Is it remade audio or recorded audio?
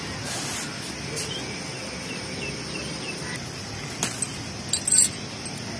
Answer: recorded